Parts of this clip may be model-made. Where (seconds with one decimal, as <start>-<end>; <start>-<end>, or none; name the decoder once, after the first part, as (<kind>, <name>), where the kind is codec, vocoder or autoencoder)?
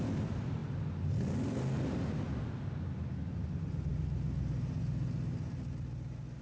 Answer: none